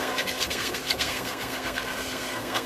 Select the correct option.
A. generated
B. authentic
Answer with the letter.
A